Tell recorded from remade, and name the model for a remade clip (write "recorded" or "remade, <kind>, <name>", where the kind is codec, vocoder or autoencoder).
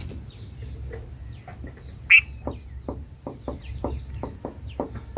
recorded